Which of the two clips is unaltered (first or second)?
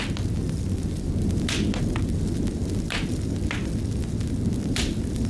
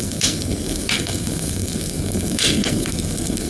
first